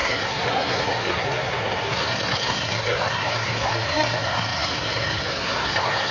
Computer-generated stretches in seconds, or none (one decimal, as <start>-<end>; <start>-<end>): 0.0-6.1